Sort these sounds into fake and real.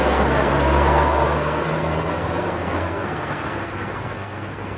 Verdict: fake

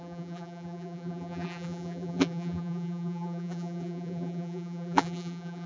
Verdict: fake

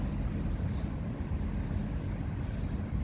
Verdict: real